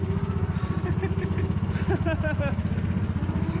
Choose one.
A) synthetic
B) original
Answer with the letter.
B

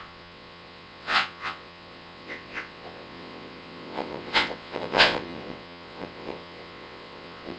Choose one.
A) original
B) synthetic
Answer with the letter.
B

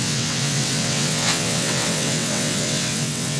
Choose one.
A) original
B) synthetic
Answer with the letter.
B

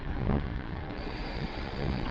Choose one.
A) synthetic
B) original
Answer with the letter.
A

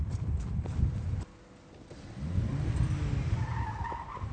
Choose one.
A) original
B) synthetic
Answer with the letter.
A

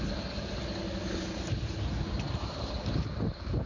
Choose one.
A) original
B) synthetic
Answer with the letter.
A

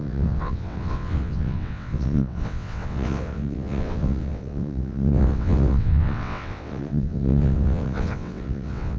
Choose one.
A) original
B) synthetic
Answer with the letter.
B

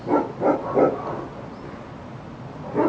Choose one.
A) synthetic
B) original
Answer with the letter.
B